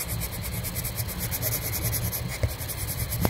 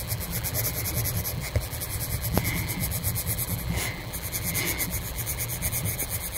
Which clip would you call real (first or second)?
first